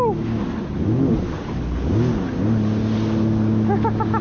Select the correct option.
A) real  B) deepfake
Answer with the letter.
A